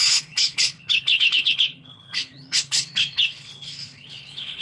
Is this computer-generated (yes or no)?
yes